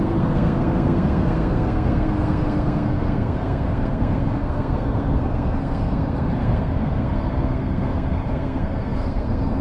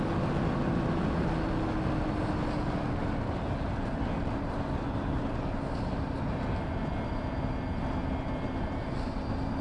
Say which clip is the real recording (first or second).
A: second